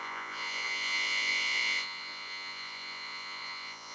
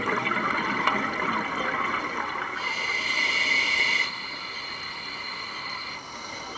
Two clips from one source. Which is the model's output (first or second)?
first